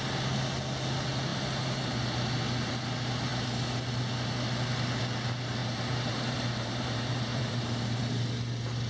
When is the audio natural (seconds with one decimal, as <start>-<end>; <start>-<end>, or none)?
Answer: 0.0-5.6; 8.0-8.9